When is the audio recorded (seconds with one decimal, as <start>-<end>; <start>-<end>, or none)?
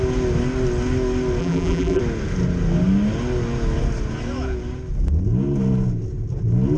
0.0-1.4; 2.0-6.8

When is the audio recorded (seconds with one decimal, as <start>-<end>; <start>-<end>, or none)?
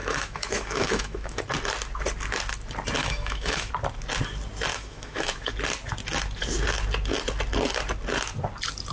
1.4-3.0; 3.7-4.7; 5.5-8.9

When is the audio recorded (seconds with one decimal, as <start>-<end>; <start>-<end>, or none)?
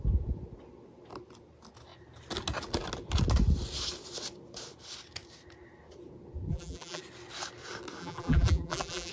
0.0-6.5; 7.0-8.0